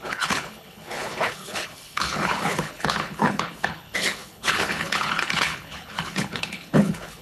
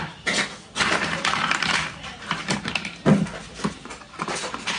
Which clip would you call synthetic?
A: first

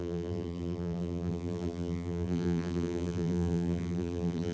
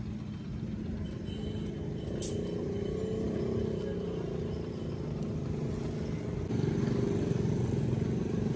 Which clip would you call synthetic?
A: first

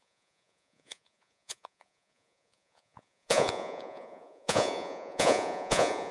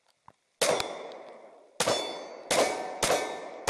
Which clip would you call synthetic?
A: first